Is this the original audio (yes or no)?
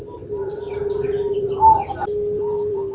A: no